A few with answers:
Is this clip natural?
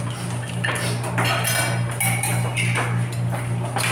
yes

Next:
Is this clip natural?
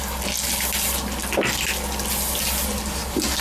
yes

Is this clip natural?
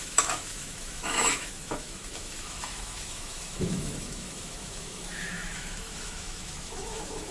no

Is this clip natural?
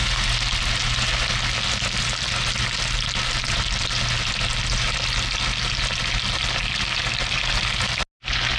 yes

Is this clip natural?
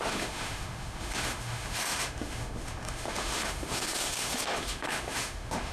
no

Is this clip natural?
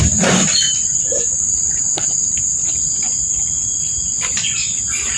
yes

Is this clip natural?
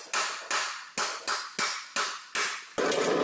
yes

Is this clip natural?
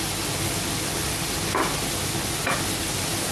yes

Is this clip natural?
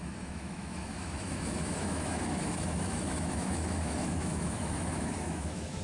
no